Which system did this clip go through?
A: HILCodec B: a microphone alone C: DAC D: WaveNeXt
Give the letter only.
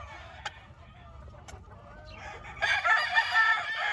B